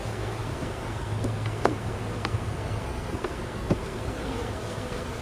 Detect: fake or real fake